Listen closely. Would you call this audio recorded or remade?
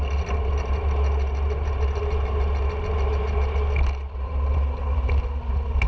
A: recorded